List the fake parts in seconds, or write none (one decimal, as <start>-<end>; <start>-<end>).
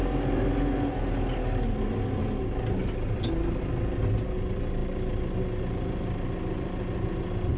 none